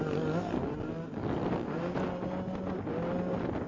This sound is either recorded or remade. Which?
recorded